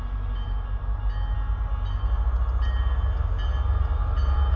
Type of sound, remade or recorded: recorded